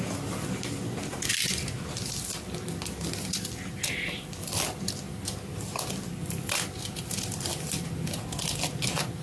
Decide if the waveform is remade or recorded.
recorded